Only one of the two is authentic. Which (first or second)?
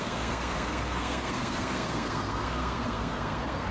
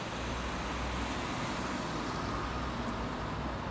second